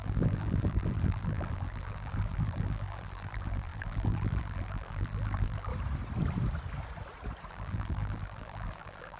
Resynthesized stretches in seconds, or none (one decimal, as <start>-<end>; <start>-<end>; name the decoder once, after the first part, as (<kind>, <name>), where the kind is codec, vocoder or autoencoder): 0.0-5.7 (vocoder, BigVGAN v2); 7.5-9.2